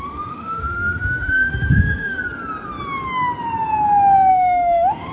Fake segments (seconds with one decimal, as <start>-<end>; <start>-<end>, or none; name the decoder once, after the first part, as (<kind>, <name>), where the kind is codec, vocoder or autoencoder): 0.0-2.2 (autoencoder, DAC-VAE); 4.3-5.1